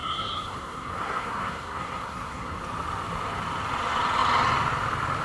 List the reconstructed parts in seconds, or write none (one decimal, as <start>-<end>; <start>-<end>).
0.0-2.6